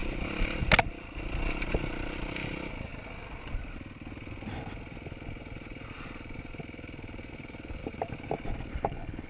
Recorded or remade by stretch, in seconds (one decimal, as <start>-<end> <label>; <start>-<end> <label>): 0.0-8.7 recorded; 8.7-9.3 remade